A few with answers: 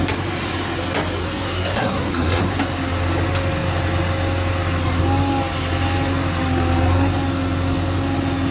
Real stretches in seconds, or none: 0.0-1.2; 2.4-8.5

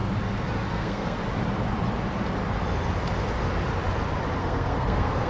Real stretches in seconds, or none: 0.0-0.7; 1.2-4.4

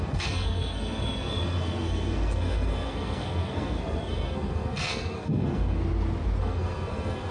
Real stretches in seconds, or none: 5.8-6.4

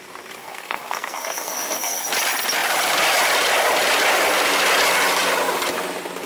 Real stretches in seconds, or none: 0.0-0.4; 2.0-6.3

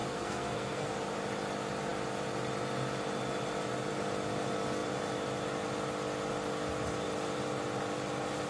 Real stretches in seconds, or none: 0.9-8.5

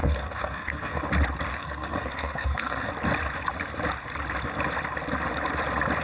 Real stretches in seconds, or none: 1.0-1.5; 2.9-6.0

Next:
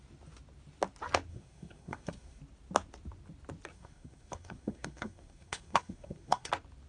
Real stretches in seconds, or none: 0.0-1.3; 2.4-3.7; 6.5-6.9